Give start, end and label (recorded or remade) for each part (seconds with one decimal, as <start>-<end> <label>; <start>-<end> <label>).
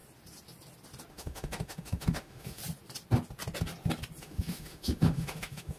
0.0-1.1 recorded; 1.1-2.6 remade; 2.6-4.2 recorded; 4.2-5.8 remade